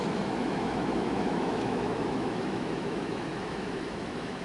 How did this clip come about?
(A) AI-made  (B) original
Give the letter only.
A